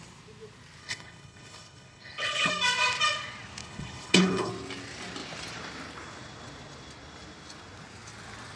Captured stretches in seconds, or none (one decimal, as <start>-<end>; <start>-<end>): 0.0-0.8; 2.5-3.6; 4.5-8.6